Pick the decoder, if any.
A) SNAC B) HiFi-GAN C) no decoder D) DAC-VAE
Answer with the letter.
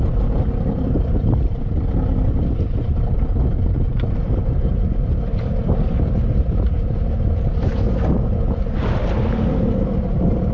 C